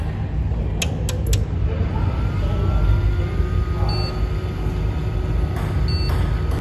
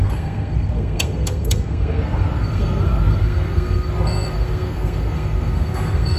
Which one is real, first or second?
first